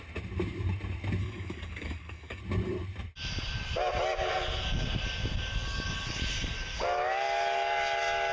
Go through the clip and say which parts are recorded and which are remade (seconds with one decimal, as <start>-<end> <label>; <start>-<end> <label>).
0.0-1.2 recorded; 1.2-2.4 remade; 2.4-8.3 recorded